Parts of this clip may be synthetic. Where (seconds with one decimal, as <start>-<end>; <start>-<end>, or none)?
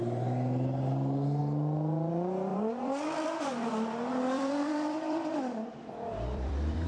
2.5-6.9